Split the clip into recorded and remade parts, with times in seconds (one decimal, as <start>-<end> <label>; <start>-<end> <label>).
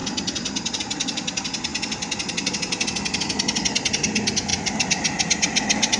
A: 0.0-6.0 recorded